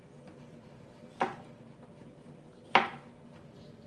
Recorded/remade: recorded